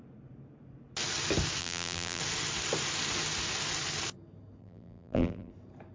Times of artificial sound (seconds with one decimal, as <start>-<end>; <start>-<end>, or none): 1.6-2.2; 4.6-5.5